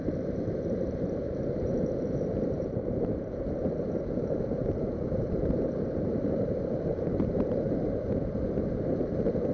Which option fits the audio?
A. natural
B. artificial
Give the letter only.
B